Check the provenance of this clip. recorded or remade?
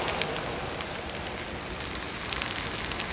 recorded